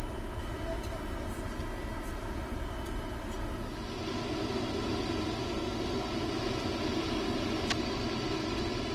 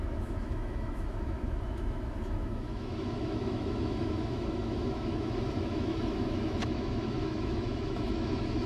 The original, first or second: first